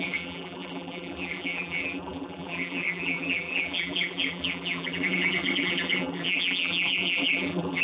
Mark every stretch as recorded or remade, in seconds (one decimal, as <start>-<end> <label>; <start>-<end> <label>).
0.0-7.8 remade